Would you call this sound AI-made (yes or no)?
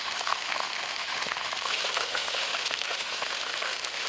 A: yes